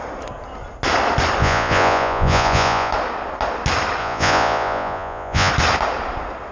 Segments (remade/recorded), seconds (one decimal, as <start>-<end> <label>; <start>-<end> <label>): 0.0-1.4 recorded; 1.4-2.9 remade; 2.9-4.0 recorded; 4.0-5.5 remade; 5.5-6.5 recorded